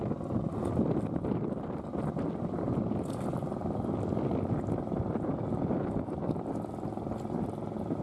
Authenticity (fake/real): real